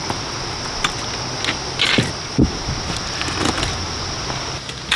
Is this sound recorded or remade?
recorded